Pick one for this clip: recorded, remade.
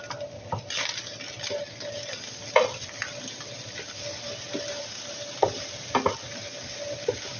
recorded